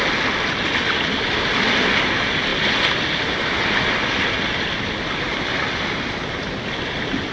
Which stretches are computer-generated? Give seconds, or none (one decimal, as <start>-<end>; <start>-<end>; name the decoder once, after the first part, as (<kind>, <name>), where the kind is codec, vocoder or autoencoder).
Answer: none